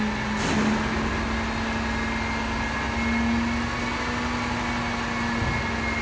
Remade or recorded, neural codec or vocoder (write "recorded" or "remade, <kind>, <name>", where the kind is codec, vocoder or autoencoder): recorded